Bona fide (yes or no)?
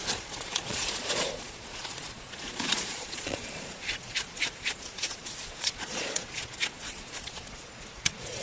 no